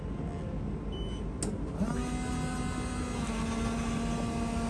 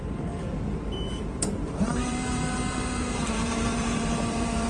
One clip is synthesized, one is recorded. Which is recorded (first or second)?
first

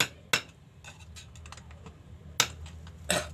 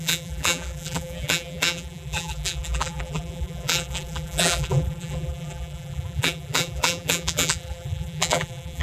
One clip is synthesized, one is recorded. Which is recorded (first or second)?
first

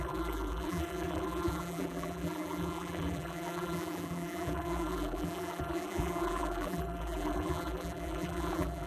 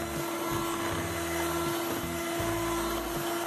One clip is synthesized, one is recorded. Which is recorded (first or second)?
second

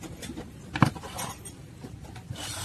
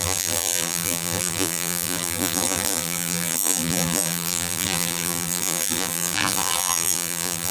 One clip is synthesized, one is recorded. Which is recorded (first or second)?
first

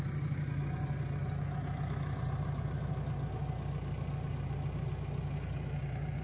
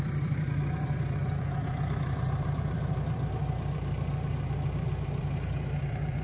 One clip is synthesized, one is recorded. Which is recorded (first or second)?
first